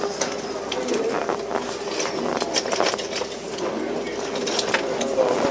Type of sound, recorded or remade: recorded